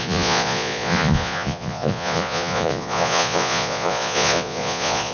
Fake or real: fake